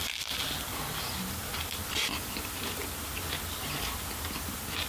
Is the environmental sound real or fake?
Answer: real